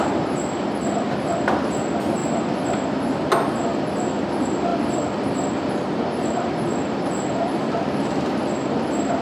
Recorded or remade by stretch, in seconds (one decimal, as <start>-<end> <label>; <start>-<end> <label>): 0.0-4.7 recorded; 4.7-5.7 remade; 5.7-9.2 recorded